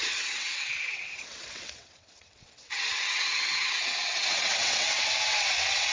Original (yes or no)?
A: no